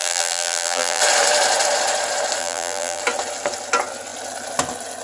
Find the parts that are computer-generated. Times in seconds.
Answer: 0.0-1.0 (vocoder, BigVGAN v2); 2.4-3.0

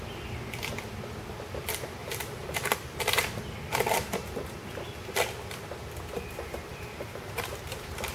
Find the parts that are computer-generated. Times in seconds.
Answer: 2.0-3.0 (vocoder, BigVGAN v2); 6.7-8.1

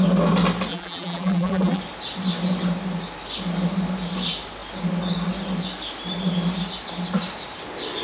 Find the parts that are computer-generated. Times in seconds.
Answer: 0.7-1.8 (vocoder, BigVGAN v2)

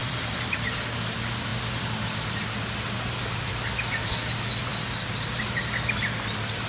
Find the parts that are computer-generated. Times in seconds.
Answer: 0.0-0.8 (vocoder, BigVGAN v2); 4.7-5.6

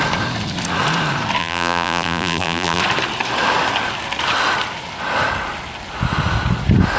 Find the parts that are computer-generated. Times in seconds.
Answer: 1.4-2.8 (vocoder, BigVGAN v2)